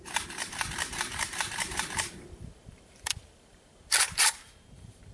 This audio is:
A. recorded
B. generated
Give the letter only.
B